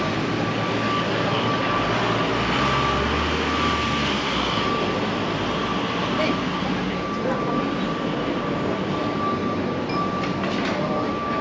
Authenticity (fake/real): real